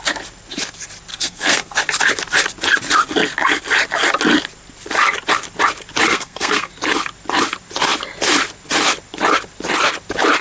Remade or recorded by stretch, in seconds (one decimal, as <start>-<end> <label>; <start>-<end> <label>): 0.0-1.1 recorded; 1.1-1.8 remade; 1.8-6.1 recorded; 6.1-6.7 remade; 6.7-10.4 recorded